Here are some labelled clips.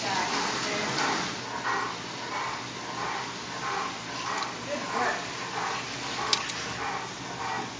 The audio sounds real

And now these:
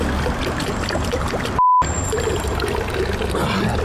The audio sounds real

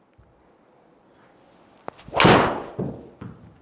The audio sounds real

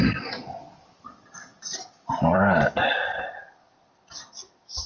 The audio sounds fake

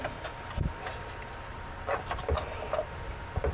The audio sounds real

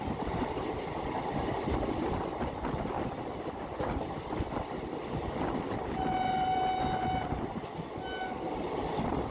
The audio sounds real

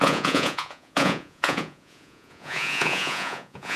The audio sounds fake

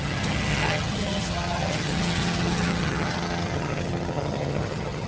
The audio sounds fake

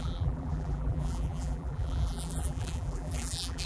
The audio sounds fake